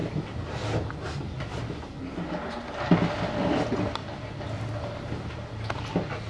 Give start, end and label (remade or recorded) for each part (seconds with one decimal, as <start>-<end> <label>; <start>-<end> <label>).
0.0-6.3 recorded